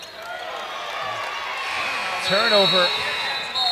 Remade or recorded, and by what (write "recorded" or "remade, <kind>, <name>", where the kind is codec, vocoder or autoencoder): recorded